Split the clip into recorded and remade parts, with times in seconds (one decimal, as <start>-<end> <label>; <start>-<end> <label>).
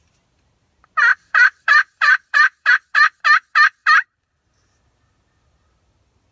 0.0-1.1 recorded; 1.1-2.7 remade; 2.7-3.8 recorded; 3.8-4.4 remade; 4.4-6.3 recorded